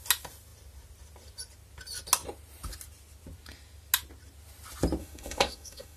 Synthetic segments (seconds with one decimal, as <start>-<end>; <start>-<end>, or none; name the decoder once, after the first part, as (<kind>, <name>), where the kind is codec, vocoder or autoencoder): 5.0-6.0 (autoencoder, DAC-VAE)